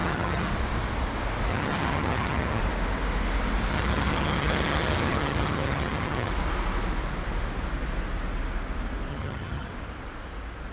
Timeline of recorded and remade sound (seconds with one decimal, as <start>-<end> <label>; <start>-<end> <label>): 0.0-0.5 remade; 0.5-1.5 recorded; 1.5-2.6 remade; 2.6-3.7 recorded; 3.7-6.3 remade; 6.3-9.1 recorded; 9.1-9.7 remade; 9.7-10.7 recorded